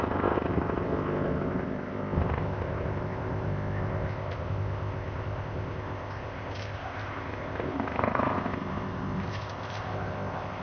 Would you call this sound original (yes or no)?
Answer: no